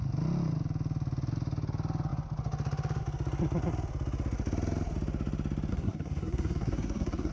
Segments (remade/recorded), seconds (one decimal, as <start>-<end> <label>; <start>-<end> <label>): 0.0-5.7 recorded; 5.7-7.3 remade